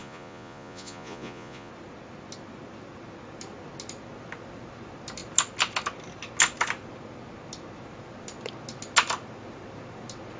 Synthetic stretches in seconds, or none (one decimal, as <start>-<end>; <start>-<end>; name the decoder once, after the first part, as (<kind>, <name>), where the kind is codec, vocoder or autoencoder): 0.0-1.7 (vocoder, Vocos)